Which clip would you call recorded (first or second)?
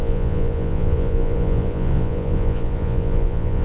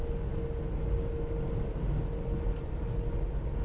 second